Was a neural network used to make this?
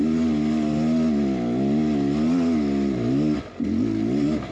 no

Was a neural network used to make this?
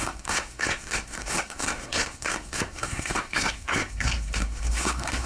yes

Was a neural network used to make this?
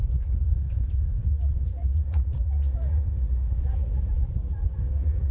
yes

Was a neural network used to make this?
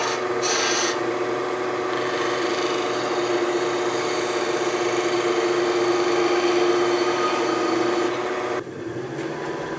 no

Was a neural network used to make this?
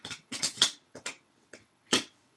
yes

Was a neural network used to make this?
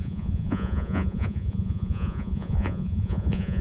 yes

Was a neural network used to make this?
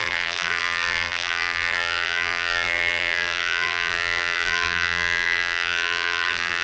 yes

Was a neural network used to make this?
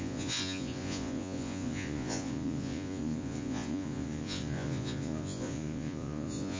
yes